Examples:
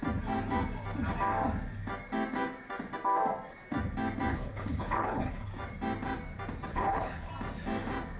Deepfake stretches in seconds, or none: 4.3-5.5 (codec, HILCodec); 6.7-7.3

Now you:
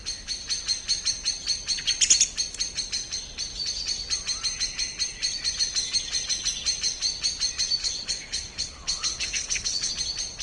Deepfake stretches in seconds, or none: 7.8-9.9 (codec, HILCodec)